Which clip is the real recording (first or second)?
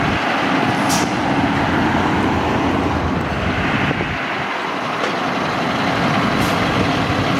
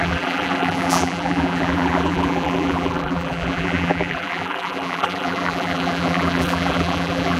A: first